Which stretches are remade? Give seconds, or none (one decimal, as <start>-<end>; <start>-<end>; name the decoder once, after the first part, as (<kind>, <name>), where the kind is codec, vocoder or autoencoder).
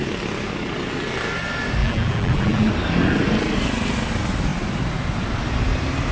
1.8-2.7 (vocoder, BigVGAN v2)